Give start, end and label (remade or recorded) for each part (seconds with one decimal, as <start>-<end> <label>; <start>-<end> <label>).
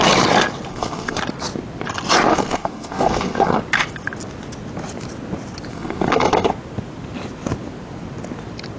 0.0-0.7 recorded; 0.7-1.2 remade; 1.2-2.3 recorded; 2.3-3.6 remade; 3.6-5.7 recorded; 5.7-6.5 remade; 6.5-8.8 recorded